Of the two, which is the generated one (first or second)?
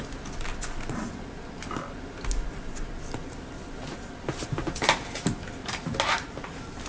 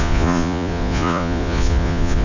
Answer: second